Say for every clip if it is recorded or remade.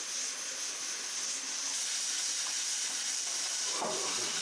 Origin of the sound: recorded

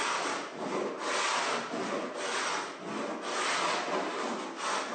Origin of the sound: recorded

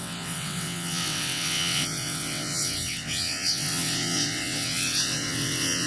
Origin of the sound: remade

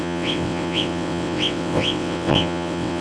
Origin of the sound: remade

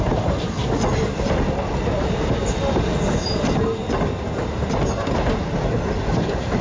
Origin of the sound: recorded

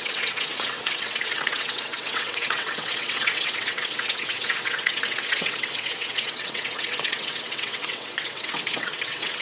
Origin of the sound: remade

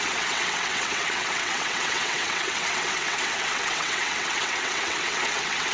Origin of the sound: remade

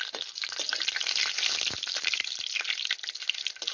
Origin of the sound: recorded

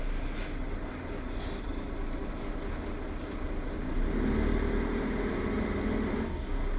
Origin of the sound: recorded